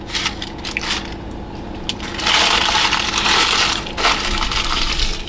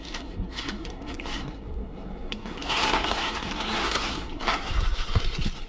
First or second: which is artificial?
second